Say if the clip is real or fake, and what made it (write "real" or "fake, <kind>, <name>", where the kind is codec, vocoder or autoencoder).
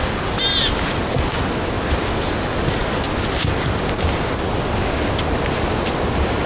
real